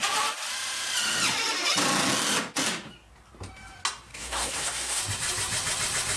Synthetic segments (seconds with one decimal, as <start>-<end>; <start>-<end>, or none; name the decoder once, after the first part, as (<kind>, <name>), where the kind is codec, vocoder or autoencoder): 4.1-5.0 (codec, SNAC)